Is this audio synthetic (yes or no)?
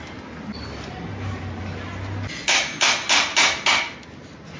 no